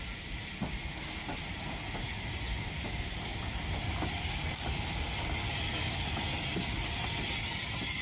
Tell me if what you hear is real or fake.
real